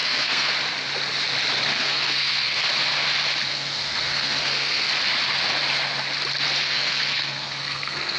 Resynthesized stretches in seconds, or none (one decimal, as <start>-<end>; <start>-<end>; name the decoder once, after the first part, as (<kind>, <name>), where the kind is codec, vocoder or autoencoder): 0.0-0.5 (codec, SNAC); 1.7-2.6; 3.5-4.9; 6.6-8.2